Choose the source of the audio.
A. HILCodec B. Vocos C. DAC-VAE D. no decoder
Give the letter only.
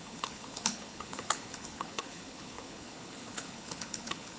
A